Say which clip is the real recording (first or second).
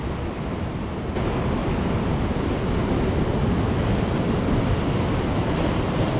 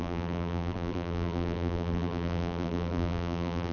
first